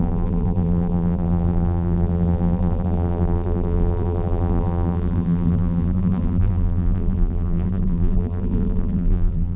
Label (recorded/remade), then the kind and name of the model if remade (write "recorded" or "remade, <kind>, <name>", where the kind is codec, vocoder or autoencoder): remade, vocoder, BigVGAN v2